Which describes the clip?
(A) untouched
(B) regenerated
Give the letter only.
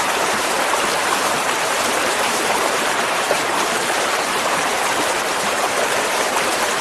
B